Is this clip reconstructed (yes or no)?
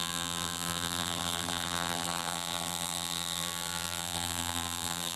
yes